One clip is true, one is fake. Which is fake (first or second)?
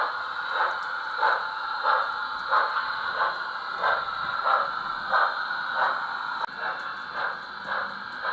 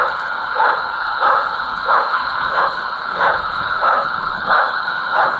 second